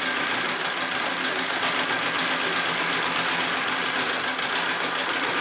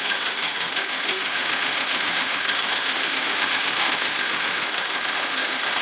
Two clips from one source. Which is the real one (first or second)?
first